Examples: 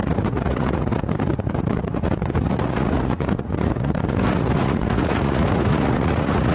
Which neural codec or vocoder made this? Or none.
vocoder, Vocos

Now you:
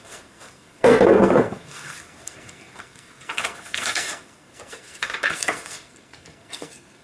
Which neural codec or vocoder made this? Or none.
codec, SNAC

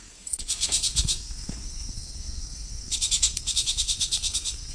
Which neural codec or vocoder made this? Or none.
codec, SNAC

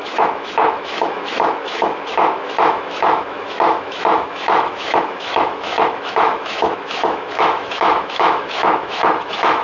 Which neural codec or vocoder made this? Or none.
autoencoder, DAC-VAE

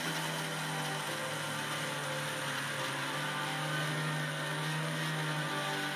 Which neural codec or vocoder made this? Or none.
none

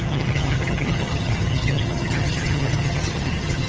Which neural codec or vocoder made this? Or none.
vocoder, HiFi-GAN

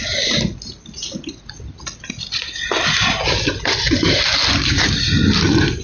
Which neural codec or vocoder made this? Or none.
none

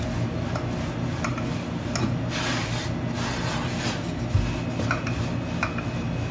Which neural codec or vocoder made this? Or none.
none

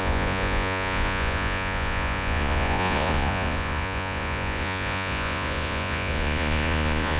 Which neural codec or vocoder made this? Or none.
vocoder, Vocos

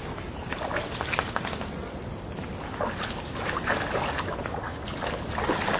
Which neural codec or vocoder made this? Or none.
none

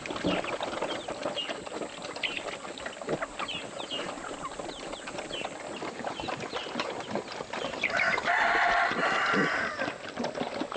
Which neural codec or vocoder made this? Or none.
none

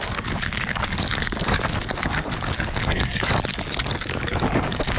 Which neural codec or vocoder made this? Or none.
codec, DAC